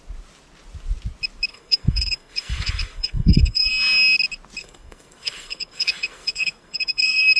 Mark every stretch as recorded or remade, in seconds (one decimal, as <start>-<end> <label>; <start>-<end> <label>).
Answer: 0.0-1.5 recorded; 1.5-3.7 remade; 3.7-4.6 recorded; 4.6-7.4 remade